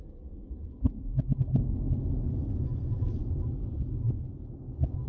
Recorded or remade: recorded